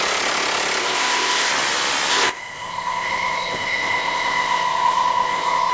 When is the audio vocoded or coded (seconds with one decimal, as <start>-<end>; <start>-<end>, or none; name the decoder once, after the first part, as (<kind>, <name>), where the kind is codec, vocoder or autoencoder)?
0.8-1.5 (codec, ZipCodec); 2.1-5.7